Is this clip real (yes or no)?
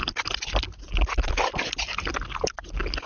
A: yes